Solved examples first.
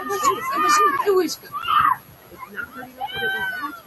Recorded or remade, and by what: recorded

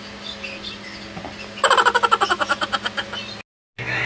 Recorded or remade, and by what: recorded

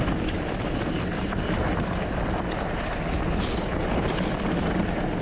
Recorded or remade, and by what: recorded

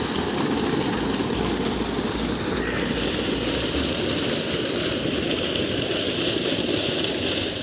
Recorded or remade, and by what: recorded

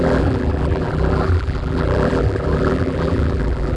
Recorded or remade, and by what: remade, vocoder, BigVGAN v2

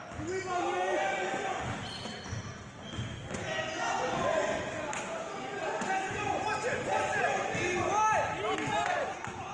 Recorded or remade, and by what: recorded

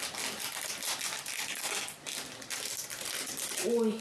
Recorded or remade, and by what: recorded